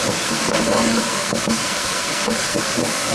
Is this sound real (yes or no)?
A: no